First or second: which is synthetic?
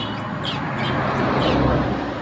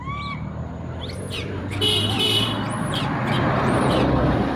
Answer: second